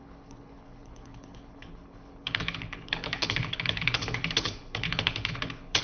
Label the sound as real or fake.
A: fake